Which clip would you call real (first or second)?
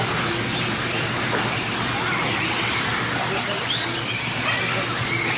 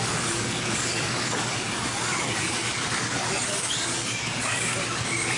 first